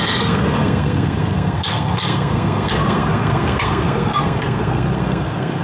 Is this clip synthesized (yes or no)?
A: yes